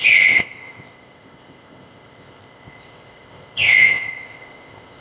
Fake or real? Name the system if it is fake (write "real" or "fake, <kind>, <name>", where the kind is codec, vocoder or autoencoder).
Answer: fake, codec, ZipCodec